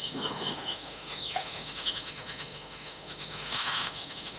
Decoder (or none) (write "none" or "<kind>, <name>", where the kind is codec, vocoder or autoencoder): autoencoder, DAC-VAE